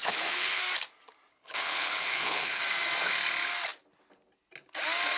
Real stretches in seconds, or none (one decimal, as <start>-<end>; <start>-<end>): 0.6-1.3; 2.6-5.2